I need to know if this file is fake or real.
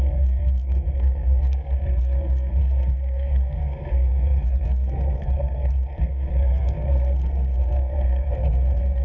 fake